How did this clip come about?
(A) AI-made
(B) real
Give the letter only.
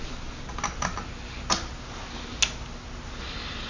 B